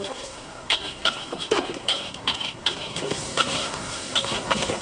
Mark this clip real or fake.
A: fake